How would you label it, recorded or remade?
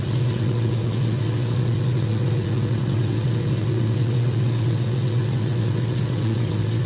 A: remade